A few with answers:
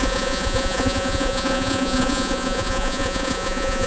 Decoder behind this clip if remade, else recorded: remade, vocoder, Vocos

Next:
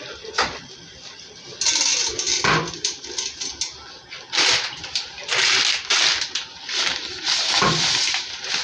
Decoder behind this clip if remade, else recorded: recorded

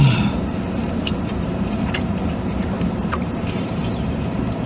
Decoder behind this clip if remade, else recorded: remade, vocoder, BigVGAN v2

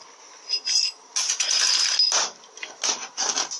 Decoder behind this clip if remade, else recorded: recorded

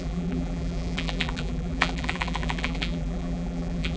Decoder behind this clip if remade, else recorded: remade, vocoder, BigVGAN v2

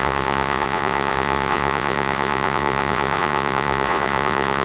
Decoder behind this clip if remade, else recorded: remade, vocoder, Vocos